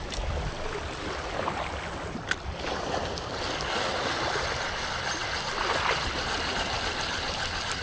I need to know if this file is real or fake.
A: real